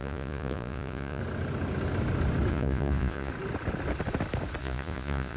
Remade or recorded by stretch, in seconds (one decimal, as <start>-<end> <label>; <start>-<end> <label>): 0.0-1.2 remade; 1.2-2.5 recorded; 2.5-3.3 remade; 3.3-4.6 recorded; 4.6-5.4 remade